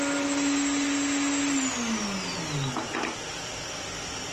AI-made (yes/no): no